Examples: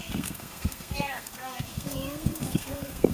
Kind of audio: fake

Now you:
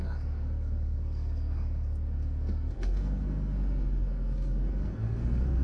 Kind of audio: fake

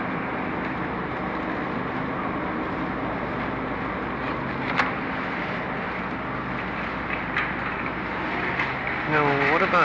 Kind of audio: real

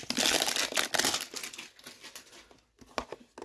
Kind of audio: real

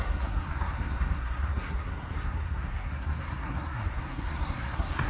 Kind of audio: fake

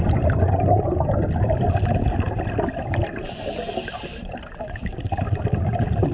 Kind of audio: real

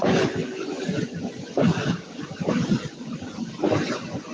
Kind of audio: real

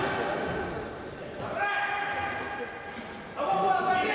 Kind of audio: real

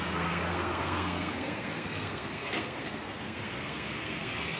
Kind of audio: fake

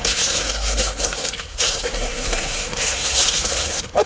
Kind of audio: fake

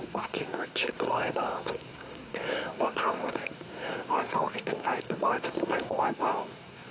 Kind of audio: fake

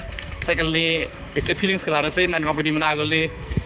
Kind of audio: fake